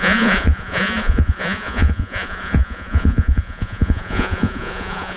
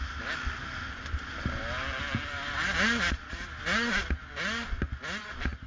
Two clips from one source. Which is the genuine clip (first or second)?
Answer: second